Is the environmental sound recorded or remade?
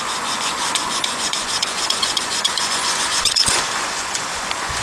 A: remade